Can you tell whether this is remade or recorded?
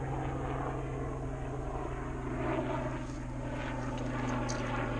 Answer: recorded